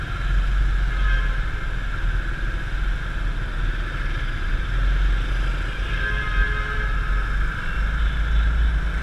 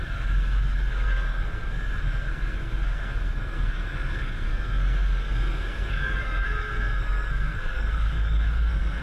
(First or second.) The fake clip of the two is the second